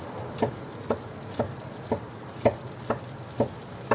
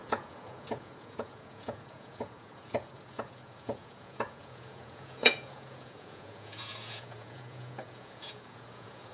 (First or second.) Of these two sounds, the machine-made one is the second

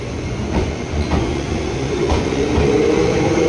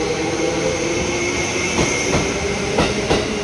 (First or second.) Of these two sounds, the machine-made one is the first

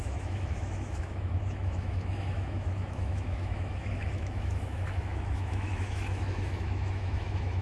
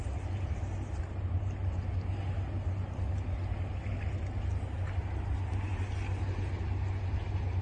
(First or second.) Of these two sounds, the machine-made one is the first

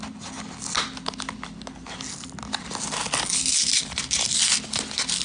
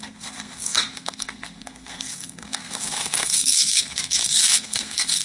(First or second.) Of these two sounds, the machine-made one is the second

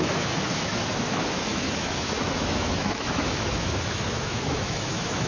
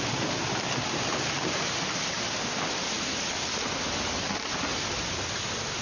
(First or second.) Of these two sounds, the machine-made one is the first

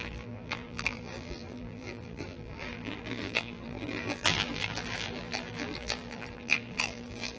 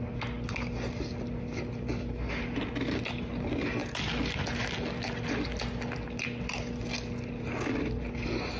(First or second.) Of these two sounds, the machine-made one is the first